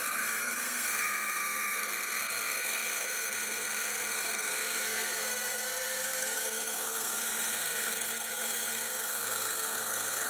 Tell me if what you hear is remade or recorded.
remade